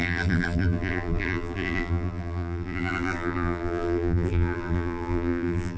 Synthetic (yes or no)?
yes